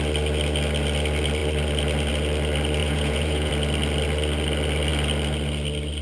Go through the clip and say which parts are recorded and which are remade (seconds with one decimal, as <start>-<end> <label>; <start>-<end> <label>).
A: 0.0-2.8 recorded; 2.8-3.5 remade; 3.5-6.0 recorded